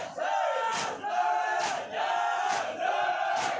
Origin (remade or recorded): recorded